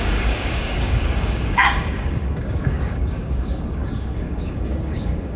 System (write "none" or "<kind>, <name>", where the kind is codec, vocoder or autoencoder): codec, DAC